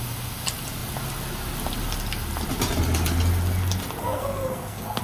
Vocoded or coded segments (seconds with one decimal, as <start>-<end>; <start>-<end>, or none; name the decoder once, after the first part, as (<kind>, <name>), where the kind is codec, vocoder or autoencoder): 4.0-5.0 (codec, SNAC)